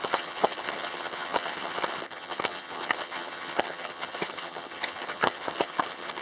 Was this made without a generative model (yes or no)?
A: no